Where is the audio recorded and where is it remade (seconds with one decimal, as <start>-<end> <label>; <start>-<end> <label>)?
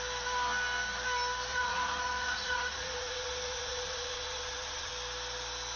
0.0-1.5 recorded; 1.5-4.9 remade; 4.9-5.8 recorded